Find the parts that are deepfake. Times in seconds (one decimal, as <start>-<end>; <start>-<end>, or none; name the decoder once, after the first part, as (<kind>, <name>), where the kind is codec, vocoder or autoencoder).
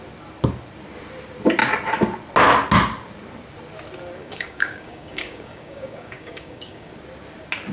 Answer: 4.2-6.9 (codec, DAC)